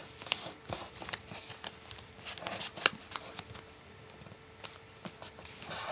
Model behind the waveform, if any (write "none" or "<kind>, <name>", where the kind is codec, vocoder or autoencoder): vocoder, BigVGAN v2